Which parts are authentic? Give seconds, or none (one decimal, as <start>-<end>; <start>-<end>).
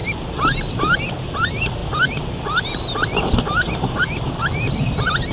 0.0-5.3